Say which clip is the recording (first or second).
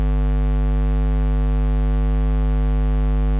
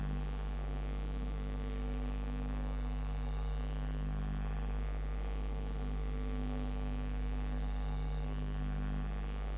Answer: first